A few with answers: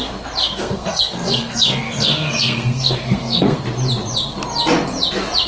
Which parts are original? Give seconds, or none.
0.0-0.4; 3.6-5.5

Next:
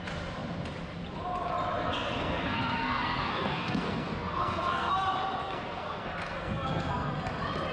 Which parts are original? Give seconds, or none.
0.0-1.8; 4.9-5.4; 7.1-7.7

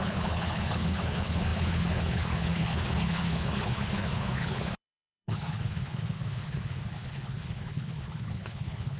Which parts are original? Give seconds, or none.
none

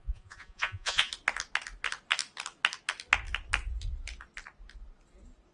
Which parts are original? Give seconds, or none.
1.1-5.5